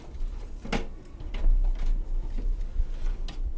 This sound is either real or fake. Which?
real